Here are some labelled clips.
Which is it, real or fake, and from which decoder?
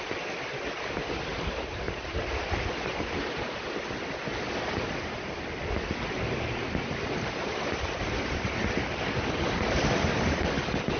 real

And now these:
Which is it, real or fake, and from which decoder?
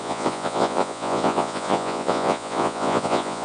fake, vocoder, Vocos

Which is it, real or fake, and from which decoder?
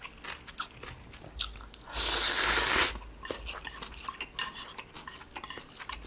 real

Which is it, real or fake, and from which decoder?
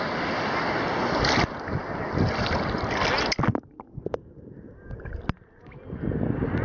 real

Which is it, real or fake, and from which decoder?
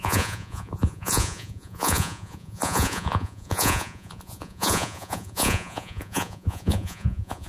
fake, vocoder, Vocos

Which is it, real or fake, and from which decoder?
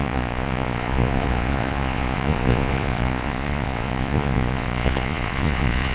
fake, vocoder, Vocos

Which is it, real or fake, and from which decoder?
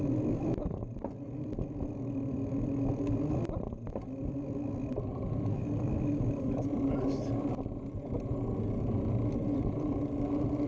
real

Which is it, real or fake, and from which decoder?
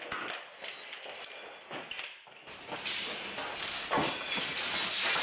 real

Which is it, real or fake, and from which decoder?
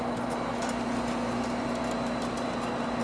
real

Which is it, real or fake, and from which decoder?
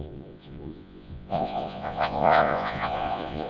fake, vocoder, Vocos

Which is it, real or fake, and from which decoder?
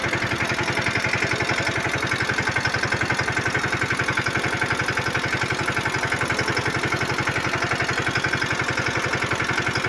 real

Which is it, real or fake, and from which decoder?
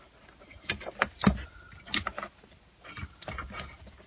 real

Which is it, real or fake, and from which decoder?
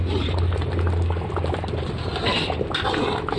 real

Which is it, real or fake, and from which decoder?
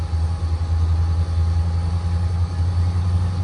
real